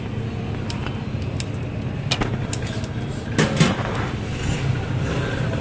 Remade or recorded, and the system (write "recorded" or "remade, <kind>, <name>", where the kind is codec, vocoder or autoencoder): recorded